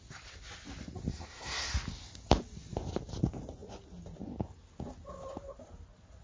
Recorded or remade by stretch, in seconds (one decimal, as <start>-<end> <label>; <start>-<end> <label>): 0.0-1.1 recorded; 1.1-1.7 remade; 1.7-6.2 recorded